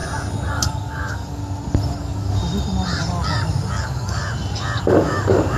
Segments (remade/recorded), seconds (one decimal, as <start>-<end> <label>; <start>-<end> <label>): 0.0-0.5 recorded; 0.5-1.4 remade; 1.4-2.0 recorded; 2.0-2.4 remade; 2.4-3.8 recorded; 3.8-4.2 remade; 4.2-4.8 recorded; 4.8-5.6 remade